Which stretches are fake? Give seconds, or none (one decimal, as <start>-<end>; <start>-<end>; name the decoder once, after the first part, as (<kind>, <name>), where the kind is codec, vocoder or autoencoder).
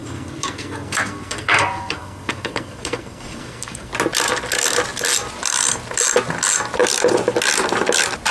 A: 0.0-3.9 (codec, SNAC)